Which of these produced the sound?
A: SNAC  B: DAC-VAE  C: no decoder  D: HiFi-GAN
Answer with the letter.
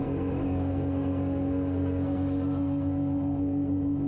A